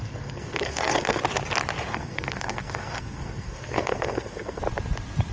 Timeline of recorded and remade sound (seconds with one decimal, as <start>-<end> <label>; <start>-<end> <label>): 0.0-1.2 remade; 1.2-1.9 recorded; 1.9-4.6 remade; 4.6-5.3 recorded